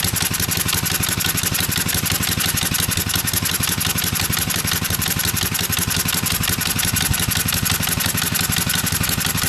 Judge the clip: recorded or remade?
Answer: recorded